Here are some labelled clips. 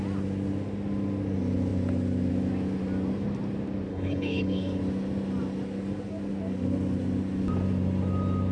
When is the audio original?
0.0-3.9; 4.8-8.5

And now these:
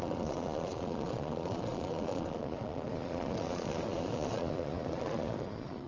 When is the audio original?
none

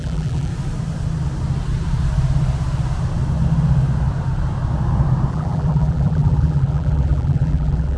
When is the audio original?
0.5-5.3

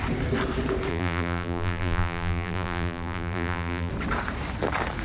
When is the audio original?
0.0-0.9; 3.9-5.0

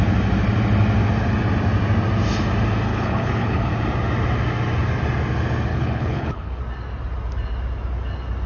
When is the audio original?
0.0-2.9; 3.7-5.7; 6.6-8.5